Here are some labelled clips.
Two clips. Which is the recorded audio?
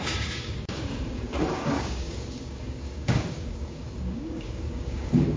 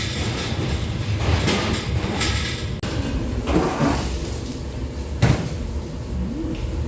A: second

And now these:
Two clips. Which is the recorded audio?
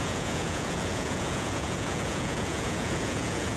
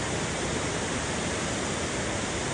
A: second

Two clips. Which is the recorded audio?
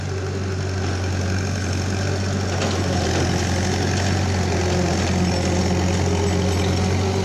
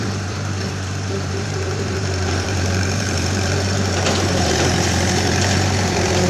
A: first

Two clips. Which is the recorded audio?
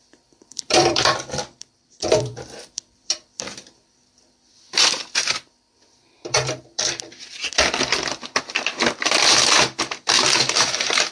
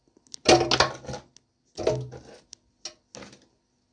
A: second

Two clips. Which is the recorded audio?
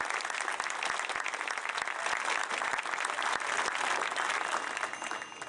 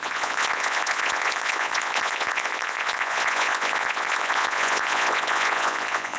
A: first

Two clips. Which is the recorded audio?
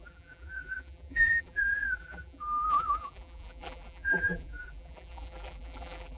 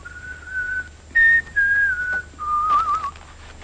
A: second